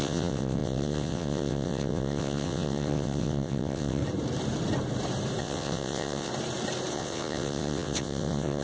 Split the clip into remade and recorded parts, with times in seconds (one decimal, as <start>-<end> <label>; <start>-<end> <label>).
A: 0.0-4.0 remade; 4.0-5.4 recorded; 5.4-6.3 remade; 6.3-6.9 recorded; 6.9-8.6 remade